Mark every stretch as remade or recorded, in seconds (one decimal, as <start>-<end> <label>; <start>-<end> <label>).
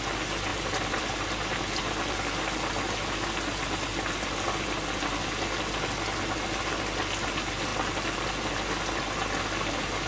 0.0-0.5 recorded; 0.5-1.6 remade; 1.6-7.7 recorded; 7.7-8.6 remade; 8.6-10.1 recorded